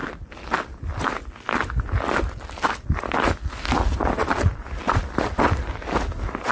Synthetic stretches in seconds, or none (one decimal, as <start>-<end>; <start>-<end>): 4.2-5.5